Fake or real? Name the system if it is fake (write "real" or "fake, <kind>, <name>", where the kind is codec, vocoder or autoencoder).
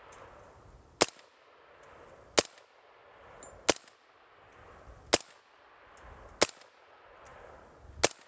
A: real